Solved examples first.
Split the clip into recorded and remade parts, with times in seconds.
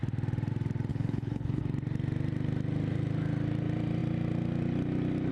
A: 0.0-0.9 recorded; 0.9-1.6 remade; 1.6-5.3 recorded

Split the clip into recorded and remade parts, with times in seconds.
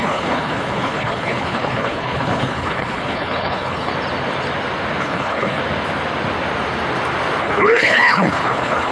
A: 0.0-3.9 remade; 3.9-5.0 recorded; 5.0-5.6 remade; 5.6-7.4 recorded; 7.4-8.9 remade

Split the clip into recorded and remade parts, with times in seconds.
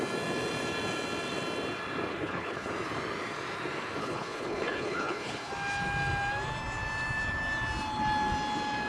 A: 0.0-2.1 recorded; 2.1-2.7 remade; 2.7-4.0 recorded; 4.0-5.5 remade; 5.5-8.9 recorded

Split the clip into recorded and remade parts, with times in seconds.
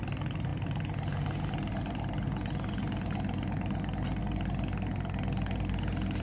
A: 0.0-6.2 recorded